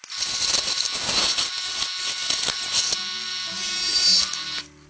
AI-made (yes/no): no